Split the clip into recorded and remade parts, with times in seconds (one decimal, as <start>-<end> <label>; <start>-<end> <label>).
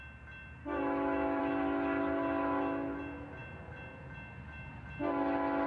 0.0-0.6 recorded; 0.6-1.4 remade; 1.4-5.7 recorded